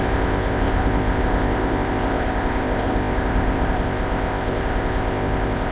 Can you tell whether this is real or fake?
fake